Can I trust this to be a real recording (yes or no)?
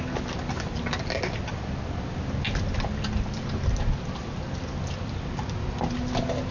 yes